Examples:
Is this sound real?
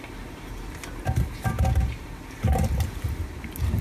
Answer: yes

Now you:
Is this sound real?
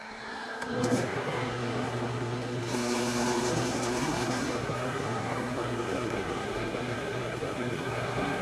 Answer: no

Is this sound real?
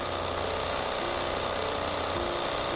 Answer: yes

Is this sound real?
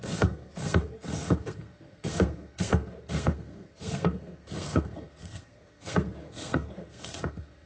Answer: no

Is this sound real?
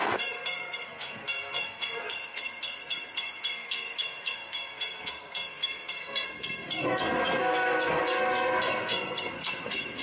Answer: no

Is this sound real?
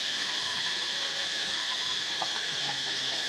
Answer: no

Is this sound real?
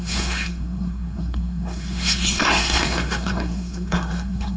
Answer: no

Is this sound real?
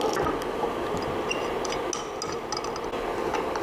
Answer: yes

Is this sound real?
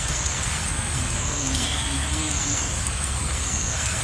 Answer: no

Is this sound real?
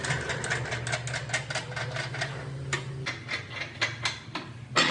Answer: yes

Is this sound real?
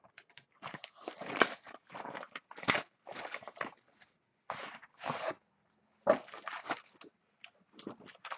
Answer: yes